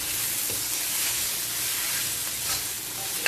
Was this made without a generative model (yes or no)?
yes